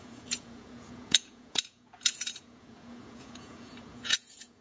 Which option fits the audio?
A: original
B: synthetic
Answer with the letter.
B